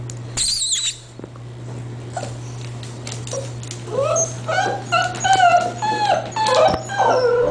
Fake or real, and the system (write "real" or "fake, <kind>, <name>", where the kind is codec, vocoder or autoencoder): real